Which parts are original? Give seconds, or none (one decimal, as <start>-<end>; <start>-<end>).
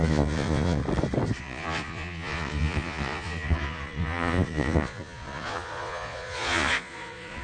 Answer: 0.8-1.4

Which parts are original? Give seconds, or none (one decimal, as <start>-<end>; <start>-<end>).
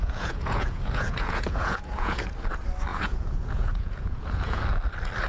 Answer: 2.3-2.9; 4.6-5.3